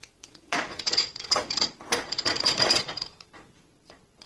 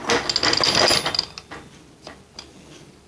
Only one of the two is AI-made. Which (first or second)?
first